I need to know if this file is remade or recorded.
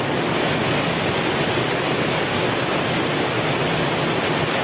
recorded